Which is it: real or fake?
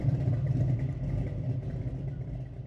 fake